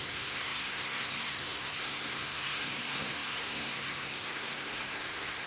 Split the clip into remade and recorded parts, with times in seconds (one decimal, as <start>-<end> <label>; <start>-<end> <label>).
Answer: 0.0-5.5 remade